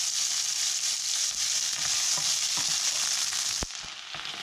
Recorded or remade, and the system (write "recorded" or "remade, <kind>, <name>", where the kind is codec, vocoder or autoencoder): recorded